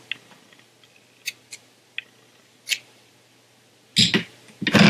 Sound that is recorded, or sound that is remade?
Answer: recorded